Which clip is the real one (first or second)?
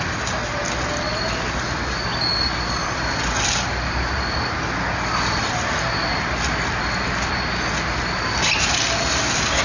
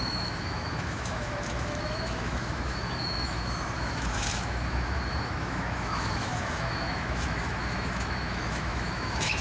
first